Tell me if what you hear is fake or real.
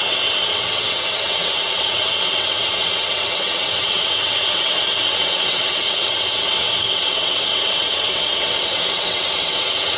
fake